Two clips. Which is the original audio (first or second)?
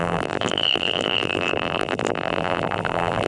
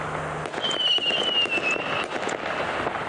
second